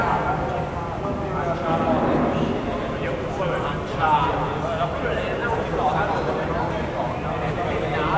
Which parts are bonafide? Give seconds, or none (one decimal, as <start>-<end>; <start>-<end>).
0.0-5.4; 6.6-8.2